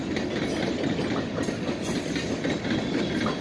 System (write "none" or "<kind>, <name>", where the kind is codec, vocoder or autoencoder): none